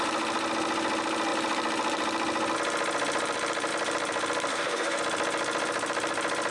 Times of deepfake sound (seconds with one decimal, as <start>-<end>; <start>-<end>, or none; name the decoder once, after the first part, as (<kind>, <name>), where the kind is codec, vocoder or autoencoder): 4.5-5.0 (codec, DAC)